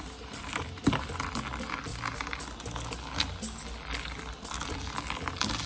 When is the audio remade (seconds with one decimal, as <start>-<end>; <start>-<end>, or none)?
0.0-1.9; 5.3-5.7